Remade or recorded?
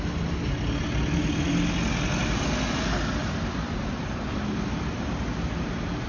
recorded